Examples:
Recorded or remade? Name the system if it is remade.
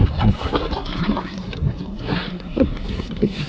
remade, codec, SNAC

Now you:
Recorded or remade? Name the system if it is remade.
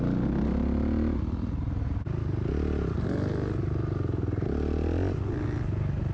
recorded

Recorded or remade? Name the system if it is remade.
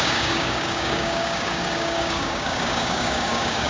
remade, codec, DAC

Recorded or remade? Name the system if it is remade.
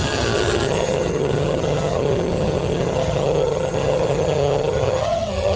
remade, vocoder, HiFi-GAN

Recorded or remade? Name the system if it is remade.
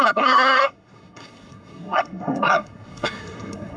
remade, codec, SNAC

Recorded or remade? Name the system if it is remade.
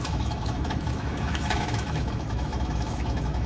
remade, autoencoder, DAC-VAE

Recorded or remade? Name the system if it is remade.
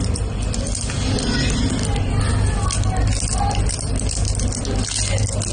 recorded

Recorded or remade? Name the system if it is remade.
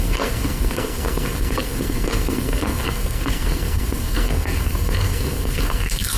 remade, codec, SNAC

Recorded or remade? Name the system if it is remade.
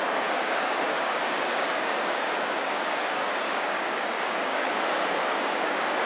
remade, codec, DAC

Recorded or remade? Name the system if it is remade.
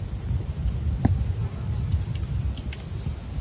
recorded